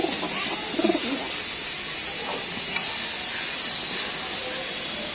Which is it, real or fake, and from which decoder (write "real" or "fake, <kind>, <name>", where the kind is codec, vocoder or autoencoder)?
real